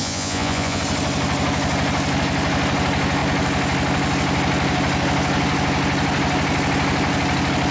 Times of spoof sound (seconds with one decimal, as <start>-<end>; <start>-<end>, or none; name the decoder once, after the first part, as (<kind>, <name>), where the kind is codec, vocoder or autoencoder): 0.0-0.8 (vocoder, Vocos)